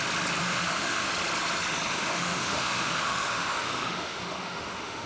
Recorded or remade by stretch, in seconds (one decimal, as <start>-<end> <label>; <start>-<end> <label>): 0.0-0.4 recorded; 0.4-1.1 remade; 1.1-1.9 recorded; 1.9-5.1 remade